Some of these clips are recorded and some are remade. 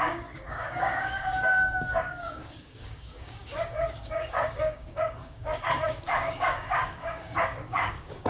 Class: remade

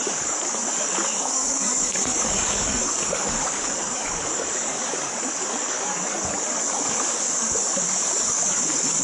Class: remade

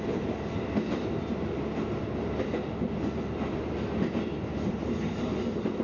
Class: recorded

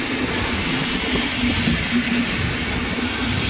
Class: recorded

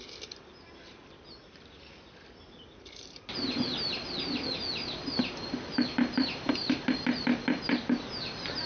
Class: recorded